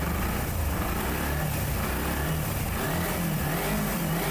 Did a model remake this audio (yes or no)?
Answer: no